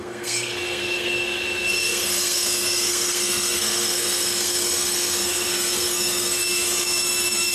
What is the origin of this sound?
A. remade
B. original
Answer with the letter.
A